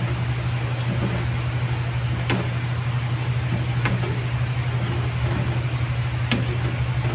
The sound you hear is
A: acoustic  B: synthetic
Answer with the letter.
A